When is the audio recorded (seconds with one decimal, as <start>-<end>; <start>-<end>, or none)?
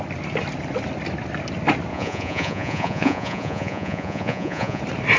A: 0.0-1.9; 4.8-5.2